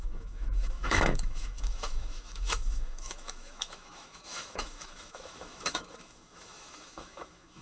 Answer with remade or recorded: remade